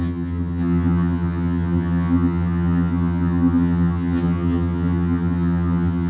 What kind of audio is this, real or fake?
fake